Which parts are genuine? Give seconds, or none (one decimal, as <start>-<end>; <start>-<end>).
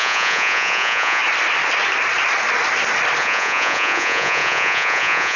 1.2-3.2